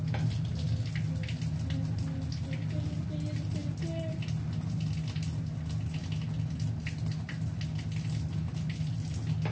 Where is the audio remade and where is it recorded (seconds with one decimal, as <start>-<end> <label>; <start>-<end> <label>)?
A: 0.0-9.5 recorded